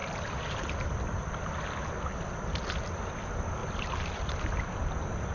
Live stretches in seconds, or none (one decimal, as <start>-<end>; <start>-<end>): 0.0-3.6; 4.4-5.3